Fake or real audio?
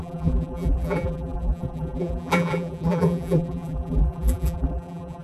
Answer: fake